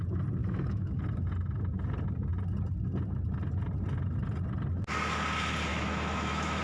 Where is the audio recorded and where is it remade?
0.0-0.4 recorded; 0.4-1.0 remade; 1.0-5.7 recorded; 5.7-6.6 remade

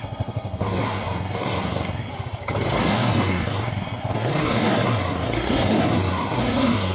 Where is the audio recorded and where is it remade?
0.0-2.1 remade; 2.1-2.8 recorded; 2.8-6.9 remade